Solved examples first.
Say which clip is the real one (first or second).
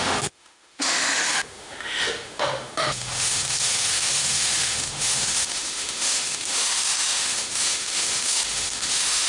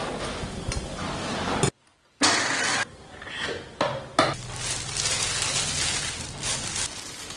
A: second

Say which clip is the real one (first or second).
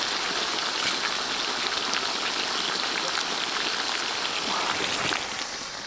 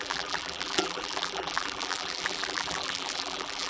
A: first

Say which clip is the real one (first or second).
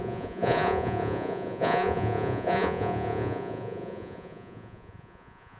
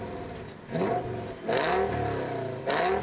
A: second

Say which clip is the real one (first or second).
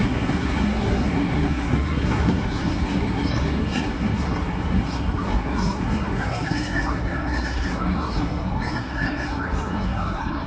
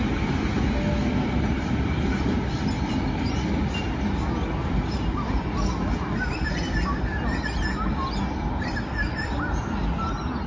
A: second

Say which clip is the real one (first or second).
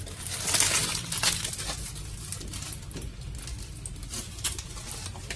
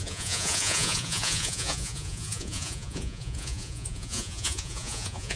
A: first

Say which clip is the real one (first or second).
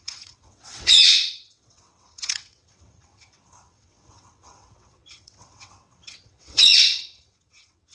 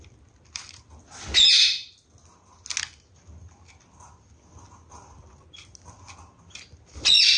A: second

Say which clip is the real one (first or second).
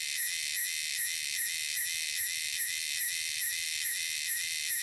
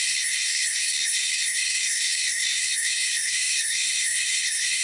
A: first